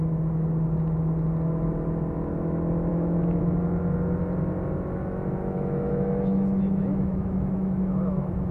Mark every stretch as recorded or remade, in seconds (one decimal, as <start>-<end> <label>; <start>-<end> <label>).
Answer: 0.0-2.9 recorded; 2.9-3.4 remade; 3.4-5.4 recorded; 5.4-8.5 remade